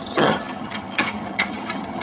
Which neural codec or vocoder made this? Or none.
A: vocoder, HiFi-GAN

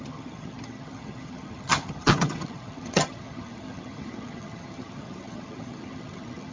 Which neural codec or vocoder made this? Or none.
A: vocoder, HiFi-GAN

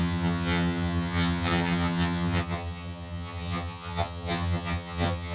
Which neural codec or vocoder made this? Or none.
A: vocoder, HiFi-GAN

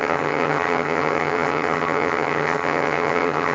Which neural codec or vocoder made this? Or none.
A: vocoder, HiFi-GAN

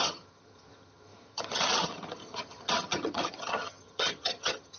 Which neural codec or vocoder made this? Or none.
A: vocoder, HiFi-GAN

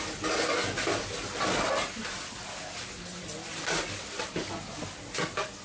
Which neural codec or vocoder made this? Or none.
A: none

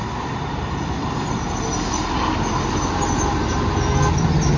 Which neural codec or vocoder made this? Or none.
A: none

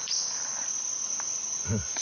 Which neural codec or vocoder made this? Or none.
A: none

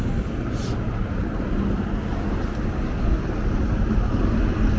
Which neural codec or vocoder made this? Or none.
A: none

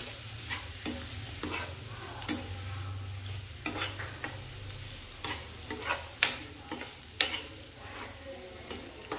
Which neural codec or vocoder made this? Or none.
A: none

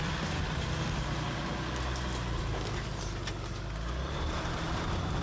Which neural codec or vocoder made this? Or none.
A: none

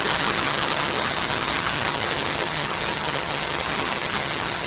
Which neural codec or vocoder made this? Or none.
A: vocoder, HiFi-GAN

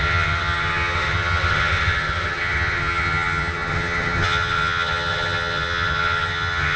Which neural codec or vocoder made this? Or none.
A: vocoder, HiFi-GAN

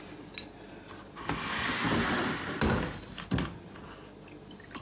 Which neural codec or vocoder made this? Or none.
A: none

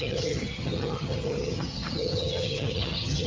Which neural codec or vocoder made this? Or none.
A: vocoder, HiFi-GAN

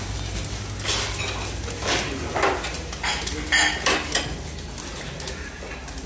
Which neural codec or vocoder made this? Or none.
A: none